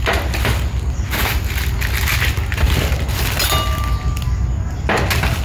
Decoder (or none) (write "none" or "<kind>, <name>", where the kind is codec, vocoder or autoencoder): none